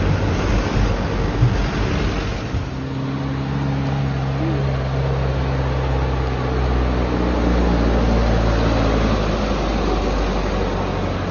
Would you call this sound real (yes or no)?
yes